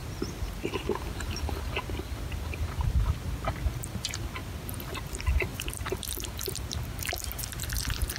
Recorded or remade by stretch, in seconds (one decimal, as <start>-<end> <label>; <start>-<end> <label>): 0.0-8.2 recorded